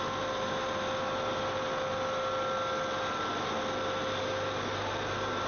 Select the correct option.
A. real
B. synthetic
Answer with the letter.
A